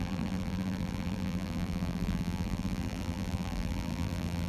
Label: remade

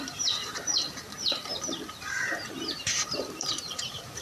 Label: remade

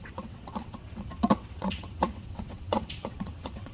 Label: remade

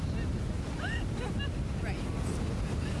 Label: recorded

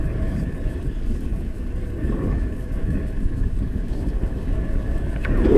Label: remade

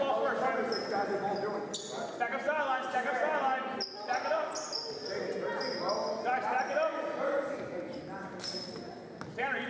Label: recorded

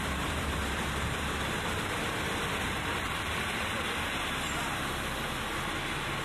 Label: remade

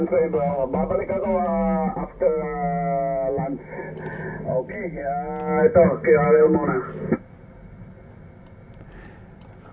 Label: recorded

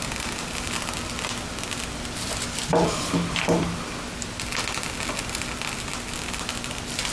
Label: recorded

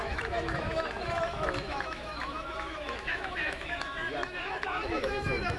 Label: remade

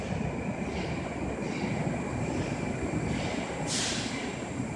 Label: remade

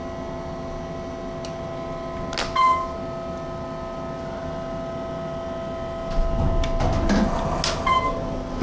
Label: recorded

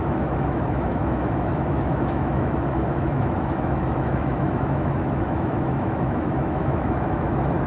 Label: remade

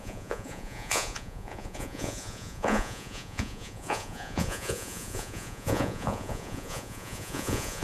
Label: remade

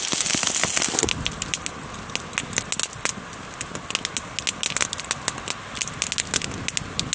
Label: recorded